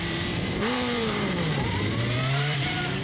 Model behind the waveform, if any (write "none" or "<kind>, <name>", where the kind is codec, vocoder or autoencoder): vocoder, BigVGAN v2